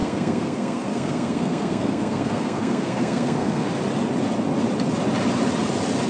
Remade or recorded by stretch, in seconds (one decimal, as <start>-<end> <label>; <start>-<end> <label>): 0.0-3.7 remade; 3.7-6.1 recorded